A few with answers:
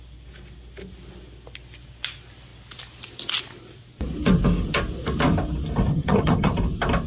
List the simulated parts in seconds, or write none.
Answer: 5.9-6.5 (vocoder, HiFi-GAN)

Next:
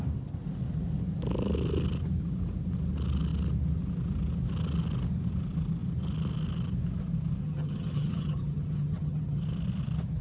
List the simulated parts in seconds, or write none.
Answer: 7.4-9.4 (vocoder, HiFi-GAN)

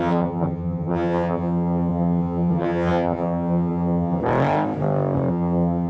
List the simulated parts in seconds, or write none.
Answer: 0.0-4.2 (vocoder, HiFi-GAN); 5.3-5.9

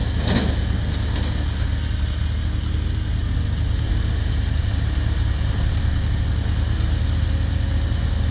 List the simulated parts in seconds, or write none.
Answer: none

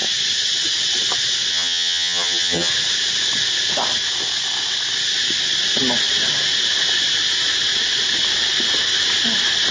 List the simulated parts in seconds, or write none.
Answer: 1.5-2.7 (vocoder, HiFi-GAN)

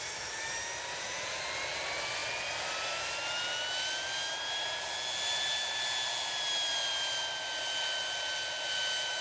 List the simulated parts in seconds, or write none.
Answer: none

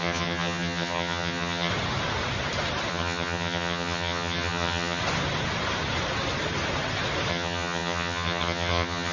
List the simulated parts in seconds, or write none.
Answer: 0.0-1.7 (vocoder, HiFi-GAN); 2.9-5.0; 7.3-9.1